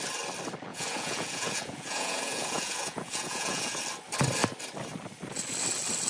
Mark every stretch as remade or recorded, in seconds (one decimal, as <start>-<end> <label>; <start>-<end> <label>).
0.0-0.7 recorded; 0.7-3.8 remade; 3.8-6.1 recorded